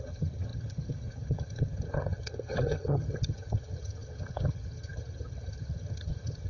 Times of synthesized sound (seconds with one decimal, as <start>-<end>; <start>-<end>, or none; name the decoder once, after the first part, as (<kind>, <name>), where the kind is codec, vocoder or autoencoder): 0.0-6.5 (vocoder, HiFi-GAN)